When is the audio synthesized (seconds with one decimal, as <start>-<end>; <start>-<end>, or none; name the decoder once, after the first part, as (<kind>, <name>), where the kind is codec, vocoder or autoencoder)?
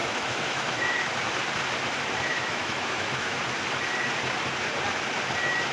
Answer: 0.0-1.1 (autoencoder, DAC-VAE); 2.3-3.4